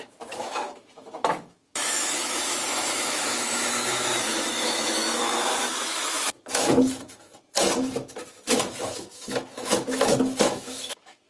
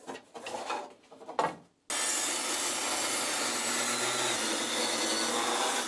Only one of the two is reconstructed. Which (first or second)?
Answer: first